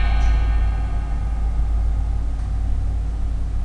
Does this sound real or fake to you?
real